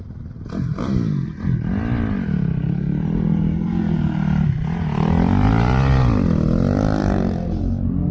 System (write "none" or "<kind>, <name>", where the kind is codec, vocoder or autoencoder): none